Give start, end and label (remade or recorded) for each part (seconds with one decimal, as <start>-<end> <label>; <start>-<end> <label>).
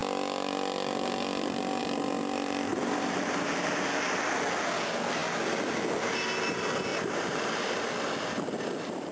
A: 0.0-2.7 recorded; 2.7-4.6 remade; 4.6-6.9 recorded; 6.9-8.1 remade; 8.1-9.1 recorded